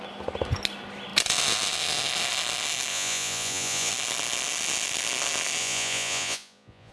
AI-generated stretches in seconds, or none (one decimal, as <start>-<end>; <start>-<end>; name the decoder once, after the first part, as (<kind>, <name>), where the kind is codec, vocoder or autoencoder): 2.9-3.9 (vocoder, Vocos); 5.6-6.9